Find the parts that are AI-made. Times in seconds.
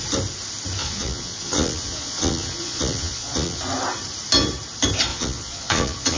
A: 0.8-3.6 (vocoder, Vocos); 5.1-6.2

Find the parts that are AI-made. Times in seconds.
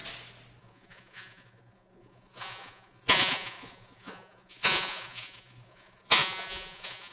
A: 0.6-7.1 (vocoder, Vocos)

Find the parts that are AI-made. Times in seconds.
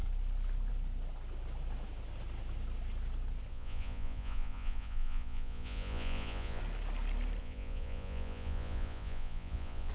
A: 3.5-6.6 (vocoder, Vocos); 7.4-9.9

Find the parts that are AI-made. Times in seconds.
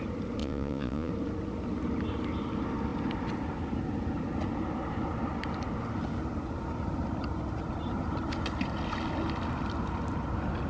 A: 0.4-1.1 (vocoder, Vocos)